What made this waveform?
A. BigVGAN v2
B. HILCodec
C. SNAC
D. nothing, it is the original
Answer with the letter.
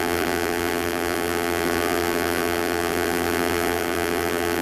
A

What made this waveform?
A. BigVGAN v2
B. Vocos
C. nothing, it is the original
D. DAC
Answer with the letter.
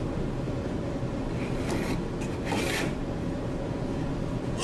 C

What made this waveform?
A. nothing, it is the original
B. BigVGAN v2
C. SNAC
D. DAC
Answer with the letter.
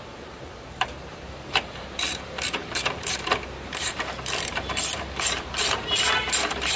B